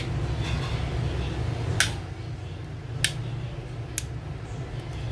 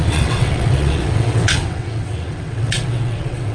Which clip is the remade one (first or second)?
second